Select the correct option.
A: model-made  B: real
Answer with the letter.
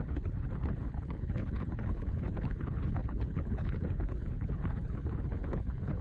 A